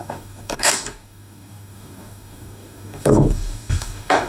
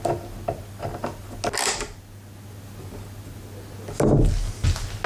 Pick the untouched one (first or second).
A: second